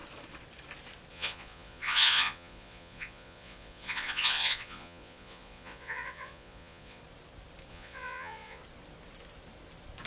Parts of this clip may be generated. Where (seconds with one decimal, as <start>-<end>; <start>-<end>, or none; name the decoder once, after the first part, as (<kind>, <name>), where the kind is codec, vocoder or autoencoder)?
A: 1.1-7.0 (vocoder, Vocos); 7.7-8.6